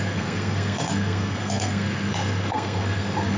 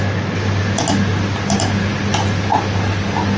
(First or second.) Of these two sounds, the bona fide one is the second